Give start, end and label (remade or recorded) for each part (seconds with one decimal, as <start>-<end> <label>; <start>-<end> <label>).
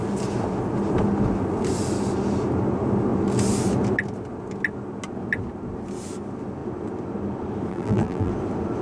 0.0-7.7 recorded; 7.7-8.3 remade; 8.3-8.8 recorded